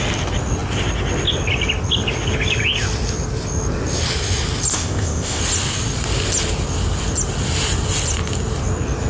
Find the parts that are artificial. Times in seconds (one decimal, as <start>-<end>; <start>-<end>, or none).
4.7-5.4